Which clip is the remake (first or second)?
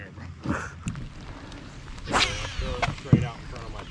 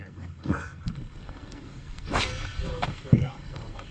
second